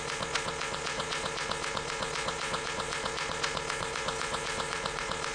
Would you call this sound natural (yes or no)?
no